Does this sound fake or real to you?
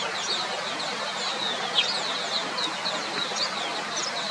real